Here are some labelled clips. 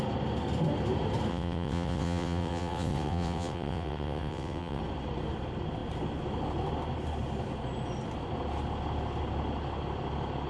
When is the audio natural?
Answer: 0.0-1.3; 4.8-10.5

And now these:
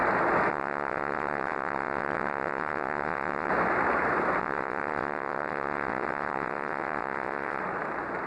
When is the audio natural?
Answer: 0.0-0.5; 3.5-4.4; 7.6-8.3

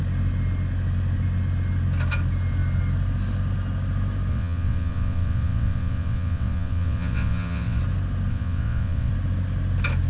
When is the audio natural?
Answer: 0.0-4.3; 7.8-8.3; 9.1-10.1

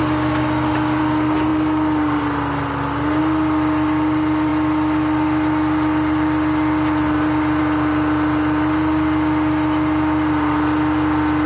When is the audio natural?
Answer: 0.0-11.5

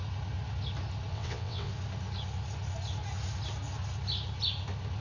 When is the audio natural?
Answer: 0.0-1.1; 1.7-5.0

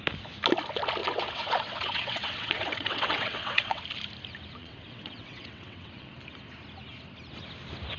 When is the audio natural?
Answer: 0.0-1.0; 3.8-4.6; 6.2-8.0